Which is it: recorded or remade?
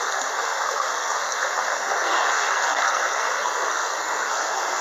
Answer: remade